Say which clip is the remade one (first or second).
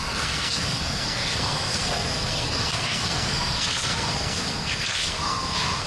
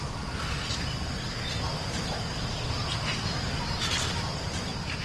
first